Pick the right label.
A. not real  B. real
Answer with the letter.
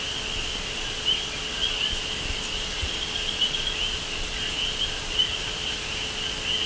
B